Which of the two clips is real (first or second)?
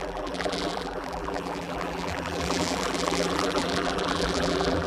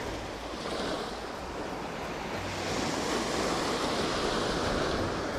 second